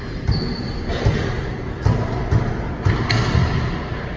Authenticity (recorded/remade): recorded